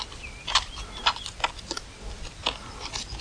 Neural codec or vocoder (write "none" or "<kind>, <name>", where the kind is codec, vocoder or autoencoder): none